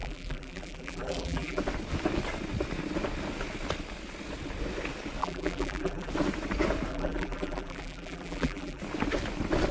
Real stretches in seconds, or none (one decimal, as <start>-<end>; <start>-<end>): 1.6-5.2; 6.1-6.9; 8.8-9.7